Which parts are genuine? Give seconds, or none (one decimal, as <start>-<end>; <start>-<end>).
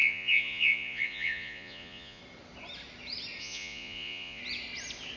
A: 2.2-3.4; 4.4-5.2